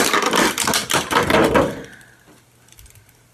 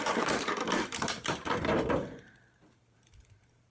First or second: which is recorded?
first